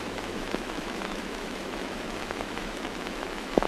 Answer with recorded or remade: remade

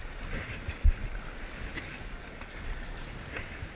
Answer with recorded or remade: recorded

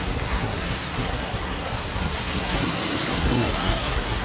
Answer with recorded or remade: remade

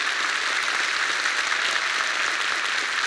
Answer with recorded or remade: recorded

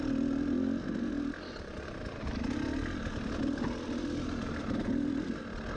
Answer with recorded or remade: recorded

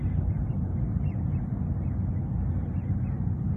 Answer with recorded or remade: recorded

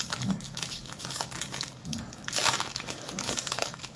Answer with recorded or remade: remade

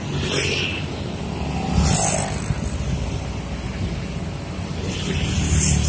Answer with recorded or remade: recorded